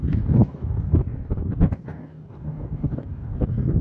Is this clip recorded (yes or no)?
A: no